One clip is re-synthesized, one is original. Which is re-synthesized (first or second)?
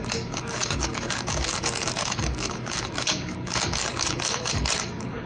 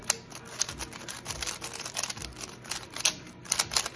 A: first